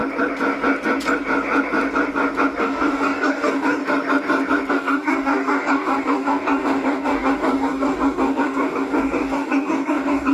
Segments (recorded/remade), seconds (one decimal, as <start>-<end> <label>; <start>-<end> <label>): 0.0-2.6 recorded; 2.6-3.8 remade; 3.8-4.7 recorded; 4.7-10.3 remade